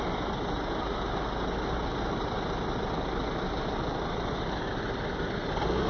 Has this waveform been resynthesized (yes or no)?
no